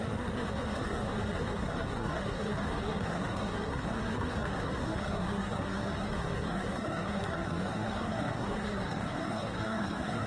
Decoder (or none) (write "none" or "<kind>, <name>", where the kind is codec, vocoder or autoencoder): codec, SNAC